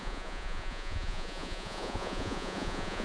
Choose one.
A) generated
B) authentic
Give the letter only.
A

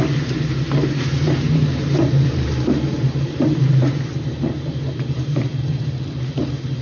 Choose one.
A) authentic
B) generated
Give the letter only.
B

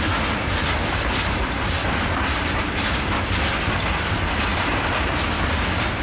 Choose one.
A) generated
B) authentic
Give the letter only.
B